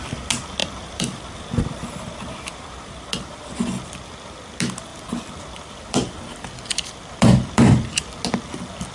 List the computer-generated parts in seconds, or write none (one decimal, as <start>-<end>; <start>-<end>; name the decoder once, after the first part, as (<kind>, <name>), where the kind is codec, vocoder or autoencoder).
0.6-3.3 (vocoder, BigVGAN v2); 4.9-7.9